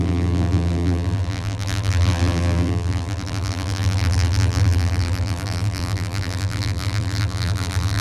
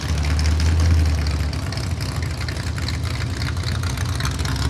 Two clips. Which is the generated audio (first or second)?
first